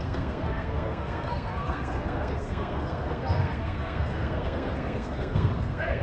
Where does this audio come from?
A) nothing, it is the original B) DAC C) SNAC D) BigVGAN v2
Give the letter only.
C